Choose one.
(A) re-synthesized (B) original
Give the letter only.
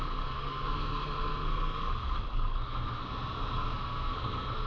A